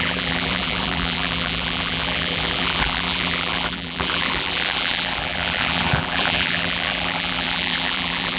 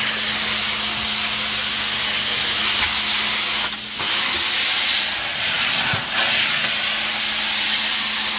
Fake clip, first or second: first